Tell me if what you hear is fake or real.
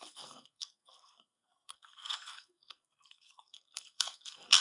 fake